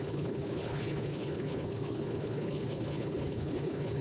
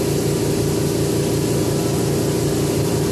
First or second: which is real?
second